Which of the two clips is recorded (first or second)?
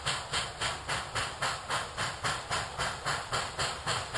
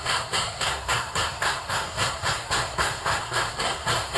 first